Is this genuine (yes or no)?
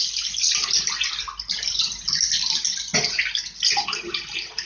yes